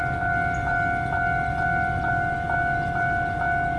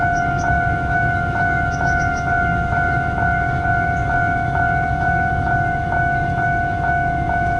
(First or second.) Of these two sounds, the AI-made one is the second